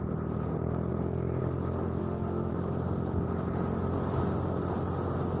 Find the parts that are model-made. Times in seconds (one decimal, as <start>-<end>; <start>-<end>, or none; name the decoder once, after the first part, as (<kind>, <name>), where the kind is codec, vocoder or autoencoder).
2.0-2.5 (autoencoder, DAC-VAE)